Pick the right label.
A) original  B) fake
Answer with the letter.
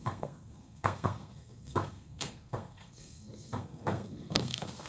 B